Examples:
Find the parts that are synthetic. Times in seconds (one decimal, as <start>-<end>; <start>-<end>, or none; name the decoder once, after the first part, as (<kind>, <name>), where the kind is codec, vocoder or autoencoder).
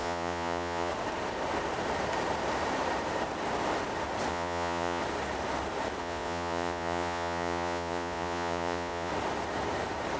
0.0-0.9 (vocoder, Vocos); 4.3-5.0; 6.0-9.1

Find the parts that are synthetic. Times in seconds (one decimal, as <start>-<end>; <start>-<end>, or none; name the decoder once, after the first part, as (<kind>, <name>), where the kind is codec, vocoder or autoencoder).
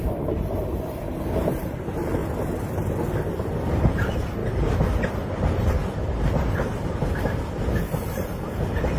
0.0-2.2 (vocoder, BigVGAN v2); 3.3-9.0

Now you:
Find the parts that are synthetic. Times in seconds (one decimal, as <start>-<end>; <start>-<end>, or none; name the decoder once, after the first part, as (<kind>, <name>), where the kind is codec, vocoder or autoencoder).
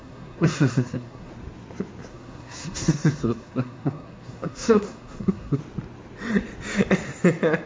0.0-1.3 (codec, SNAC); 2.1-5.6